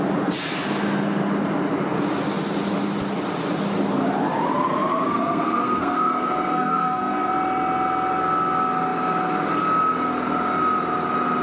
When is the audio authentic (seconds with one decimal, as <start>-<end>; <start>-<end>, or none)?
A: 0.0-5.1; 7.3-11.4